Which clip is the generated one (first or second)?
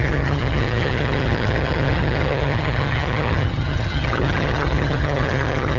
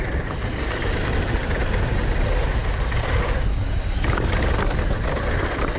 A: first